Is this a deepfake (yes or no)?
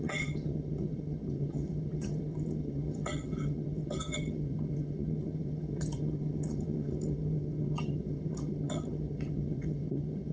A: yes